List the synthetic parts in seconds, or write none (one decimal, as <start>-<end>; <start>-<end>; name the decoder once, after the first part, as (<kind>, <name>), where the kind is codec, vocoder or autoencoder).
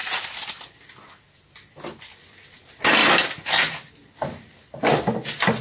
none